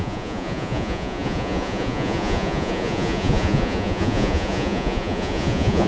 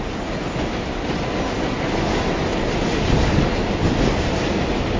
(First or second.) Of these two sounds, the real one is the second